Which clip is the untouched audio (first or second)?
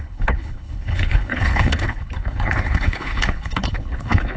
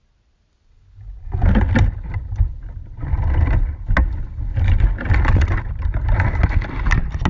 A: second